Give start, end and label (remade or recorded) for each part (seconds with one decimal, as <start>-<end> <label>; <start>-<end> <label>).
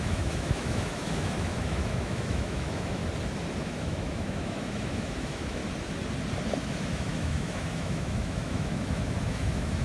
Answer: 0.0-3.0 remade; 3.0-3.6 recorded; 3.6-5.6 remade; 5.6-6.6 recorded; 6.6-9.8 remade